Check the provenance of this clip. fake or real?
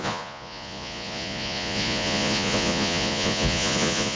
fake